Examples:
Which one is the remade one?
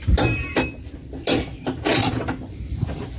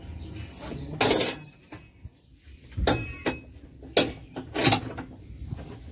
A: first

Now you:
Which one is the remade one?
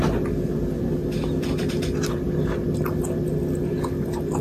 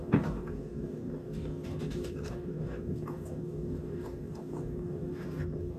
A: second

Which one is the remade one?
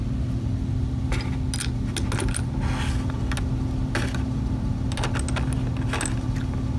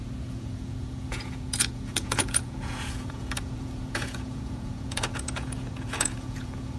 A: second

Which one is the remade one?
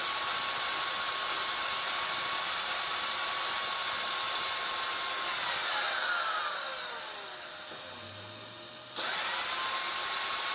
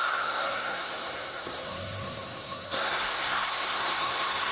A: second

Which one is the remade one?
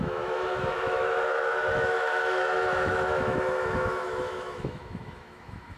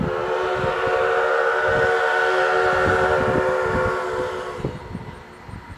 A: first